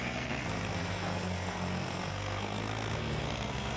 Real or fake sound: fake